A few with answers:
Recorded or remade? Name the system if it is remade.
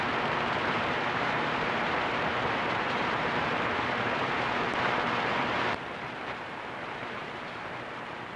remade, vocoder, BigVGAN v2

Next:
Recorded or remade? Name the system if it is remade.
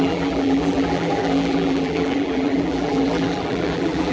remade, vocoder, BigVGAN v2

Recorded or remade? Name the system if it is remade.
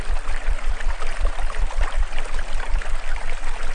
recorded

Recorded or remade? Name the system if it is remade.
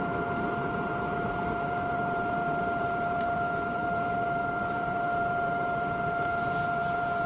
remade, vocoder, BigVGAN v2